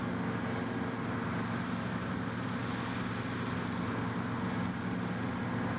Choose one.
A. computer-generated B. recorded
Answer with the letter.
B